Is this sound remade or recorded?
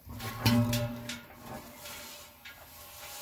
recorded